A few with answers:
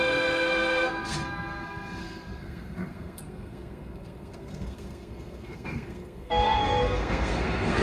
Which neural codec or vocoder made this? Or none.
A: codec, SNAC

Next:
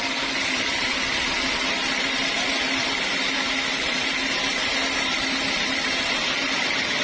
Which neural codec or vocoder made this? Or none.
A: none